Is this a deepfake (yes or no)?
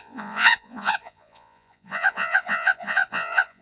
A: yes